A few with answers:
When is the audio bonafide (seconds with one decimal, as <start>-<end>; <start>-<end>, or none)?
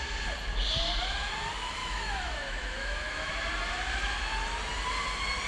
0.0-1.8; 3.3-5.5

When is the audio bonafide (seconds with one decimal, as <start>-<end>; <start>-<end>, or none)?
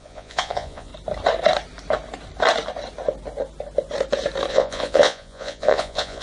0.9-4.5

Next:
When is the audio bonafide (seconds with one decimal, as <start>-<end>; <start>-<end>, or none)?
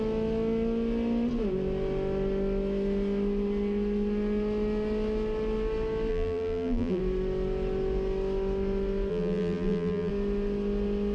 0.0-6.1; 7.0-9.1; 10.1-11.1